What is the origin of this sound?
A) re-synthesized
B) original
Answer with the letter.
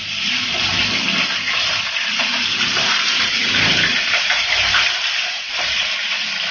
A